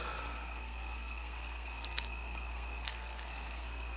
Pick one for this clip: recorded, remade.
remade